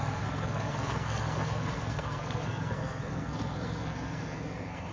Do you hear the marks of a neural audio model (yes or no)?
yes